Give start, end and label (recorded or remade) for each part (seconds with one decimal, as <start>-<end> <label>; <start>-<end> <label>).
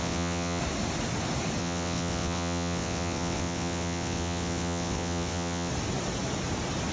0.0-0.6 remade; 0.6-1.6 recorded; 1.6-5.7 remade; 5.7-6.9 recorded